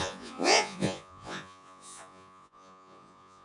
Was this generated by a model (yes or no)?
yes